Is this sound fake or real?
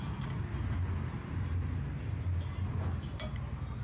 real